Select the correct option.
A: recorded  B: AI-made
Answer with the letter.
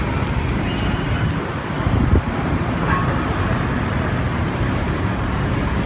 A